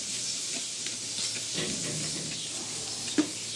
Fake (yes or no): no